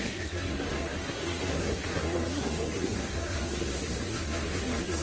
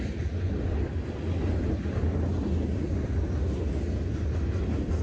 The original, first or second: second